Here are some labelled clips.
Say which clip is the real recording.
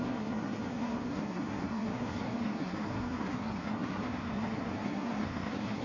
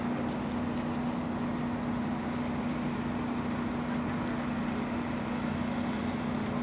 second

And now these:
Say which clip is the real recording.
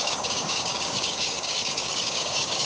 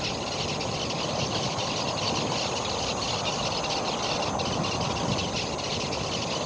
second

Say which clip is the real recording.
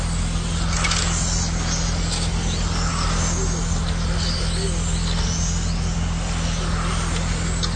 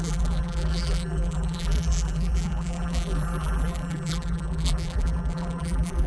first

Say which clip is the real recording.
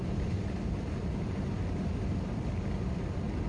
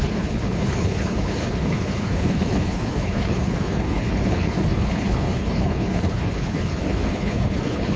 first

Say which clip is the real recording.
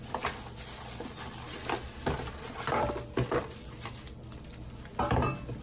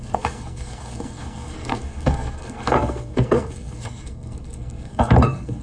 first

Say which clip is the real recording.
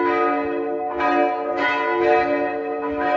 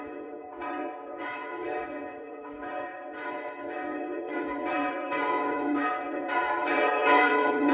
first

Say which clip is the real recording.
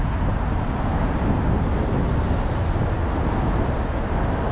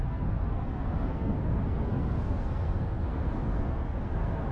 first